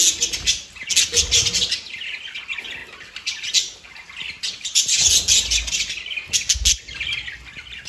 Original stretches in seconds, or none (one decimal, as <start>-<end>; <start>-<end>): 0.0-7.9